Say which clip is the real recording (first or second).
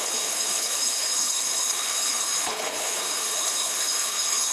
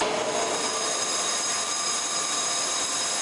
second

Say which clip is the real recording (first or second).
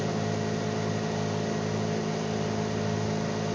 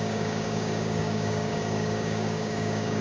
first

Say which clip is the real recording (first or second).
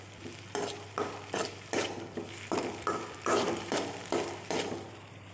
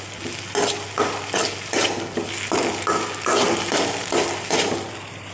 second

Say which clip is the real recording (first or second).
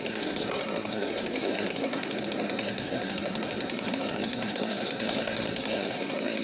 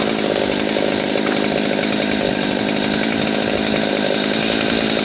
second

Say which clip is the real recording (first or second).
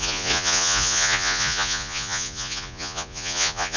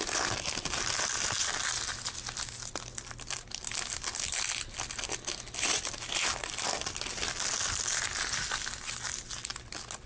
second